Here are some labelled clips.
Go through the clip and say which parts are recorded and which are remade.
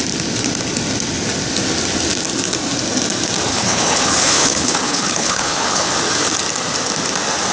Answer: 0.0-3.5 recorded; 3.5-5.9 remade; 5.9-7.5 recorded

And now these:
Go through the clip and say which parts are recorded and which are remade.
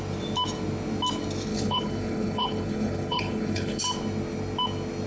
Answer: 0.0-1.5 recorded; 1.5-3.8 remade; 3.8-5.1 recorded